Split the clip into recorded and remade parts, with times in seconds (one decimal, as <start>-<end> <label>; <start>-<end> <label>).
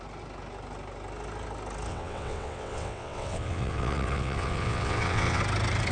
0.0-1.9 recorded; 1.9-5.4 remade; 5.4-5.9 recorded